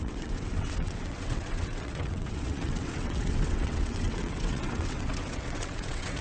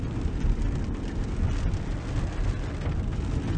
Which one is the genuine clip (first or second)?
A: second